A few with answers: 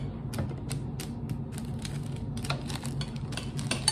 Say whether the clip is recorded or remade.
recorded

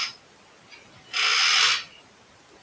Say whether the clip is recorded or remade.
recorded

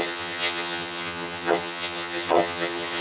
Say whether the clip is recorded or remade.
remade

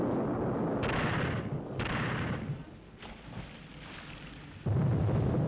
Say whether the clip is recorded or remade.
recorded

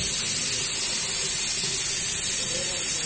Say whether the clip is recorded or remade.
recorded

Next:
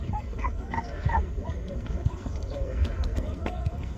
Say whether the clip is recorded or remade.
remade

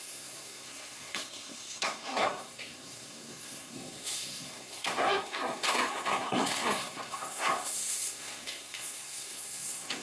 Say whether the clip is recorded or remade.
remade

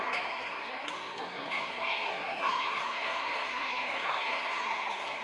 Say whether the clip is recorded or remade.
remade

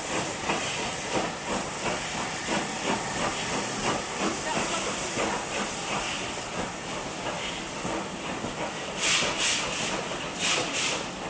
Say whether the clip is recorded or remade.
recorded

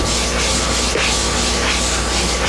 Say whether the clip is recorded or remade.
recorded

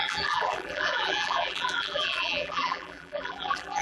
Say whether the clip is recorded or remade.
remade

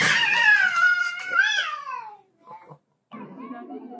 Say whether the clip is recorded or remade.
recorded